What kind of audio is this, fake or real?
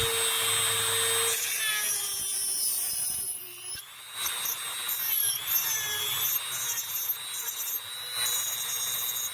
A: real